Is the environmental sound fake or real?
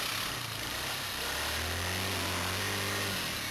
real